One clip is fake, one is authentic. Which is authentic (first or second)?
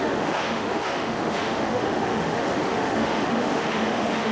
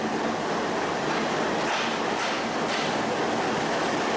second